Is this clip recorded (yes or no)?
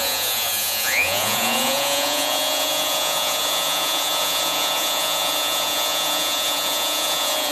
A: no